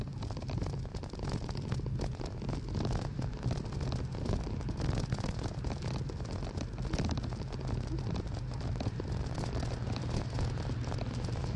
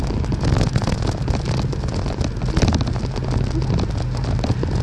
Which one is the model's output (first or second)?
first